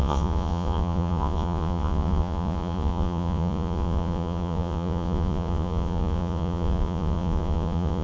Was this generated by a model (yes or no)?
yes